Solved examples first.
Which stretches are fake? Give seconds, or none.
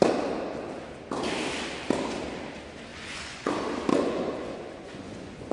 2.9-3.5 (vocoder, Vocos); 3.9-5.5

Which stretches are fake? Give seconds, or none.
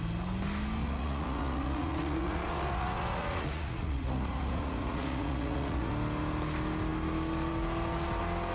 0.8-5.9 (vocoder, Vocos)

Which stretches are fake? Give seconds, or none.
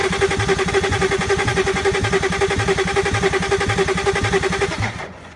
0.7-2.0 (vocoder, Vocos); 5.0-5.4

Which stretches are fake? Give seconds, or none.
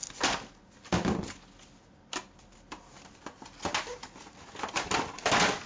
none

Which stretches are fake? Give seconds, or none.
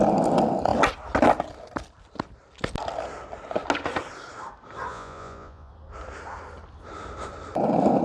4.9-5.7 (vocoder, Vocos)